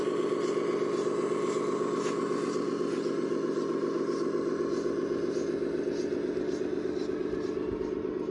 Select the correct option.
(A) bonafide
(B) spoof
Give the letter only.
A